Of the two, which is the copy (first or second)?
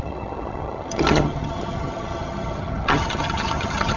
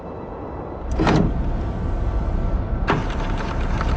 first